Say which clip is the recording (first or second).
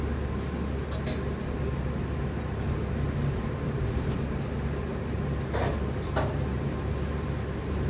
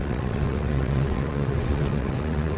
first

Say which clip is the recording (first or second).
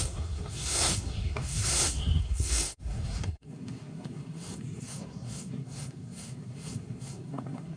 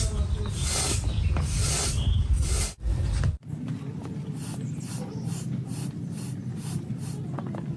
second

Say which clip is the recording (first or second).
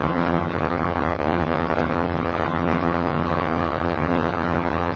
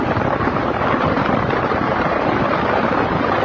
second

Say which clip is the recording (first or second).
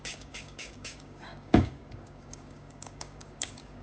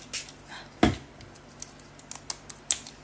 second